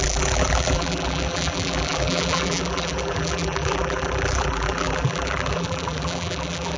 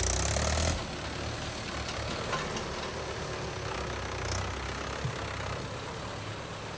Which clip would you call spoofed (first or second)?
first